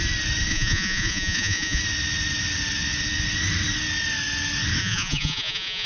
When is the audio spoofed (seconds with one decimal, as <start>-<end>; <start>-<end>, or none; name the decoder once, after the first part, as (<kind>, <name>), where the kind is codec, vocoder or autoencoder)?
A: 0.5-1.8 (vocoder, Vocos); 4.8-5.9